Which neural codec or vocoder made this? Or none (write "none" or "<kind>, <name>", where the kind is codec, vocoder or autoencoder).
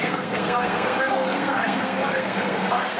codec, SNAC